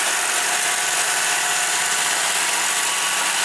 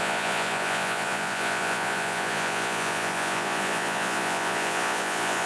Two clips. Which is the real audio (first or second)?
first